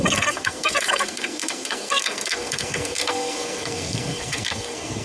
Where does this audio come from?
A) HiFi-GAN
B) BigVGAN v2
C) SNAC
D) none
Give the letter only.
C